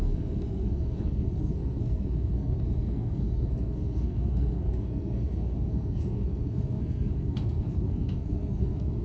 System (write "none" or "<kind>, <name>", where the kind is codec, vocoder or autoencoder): codec, SNAC